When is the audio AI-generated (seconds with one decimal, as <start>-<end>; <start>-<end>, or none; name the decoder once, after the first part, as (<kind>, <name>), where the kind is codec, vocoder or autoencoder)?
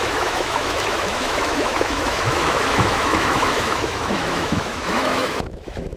0.0-6.0 (autoencoder, DAC-VAE)